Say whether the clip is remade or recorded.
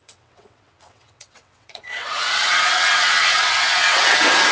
remade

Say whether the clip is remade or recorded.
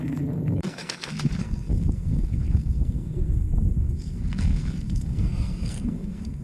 remade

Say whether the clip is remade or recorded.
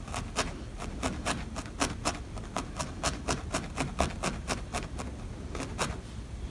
recorded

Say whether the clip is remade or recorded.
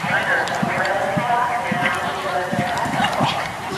remade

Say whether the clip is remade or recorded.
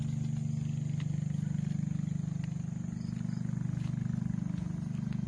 recorded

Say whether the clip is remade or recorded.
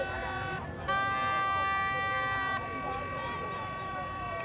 recorded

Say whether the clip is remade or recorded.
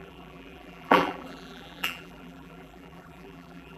remade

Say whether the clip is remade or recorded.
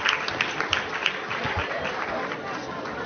recorded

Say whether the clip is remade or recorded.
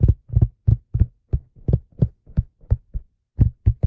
recorded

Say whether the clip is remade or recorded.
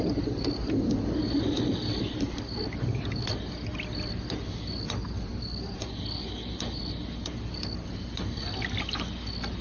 recorded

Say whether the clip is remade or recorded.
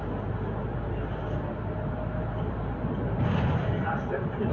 recorded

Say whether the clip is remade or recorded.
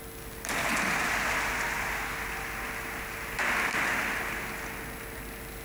recorded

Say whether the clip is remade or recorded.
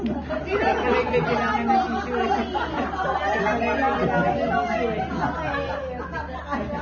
recorded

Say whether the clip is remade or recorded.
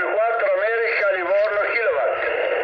recorded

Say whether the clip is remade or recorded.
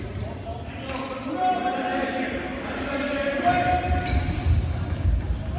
recorded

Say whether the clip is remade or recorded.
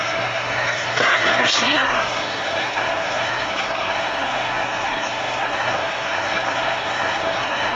remade